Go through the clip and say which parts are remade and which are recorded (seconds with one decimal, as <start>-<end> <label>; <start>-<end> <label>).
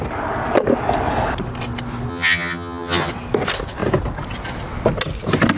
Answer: 0.0-2.1 recorded; 2.1-3.1 remade; 3.1-5.6 recorded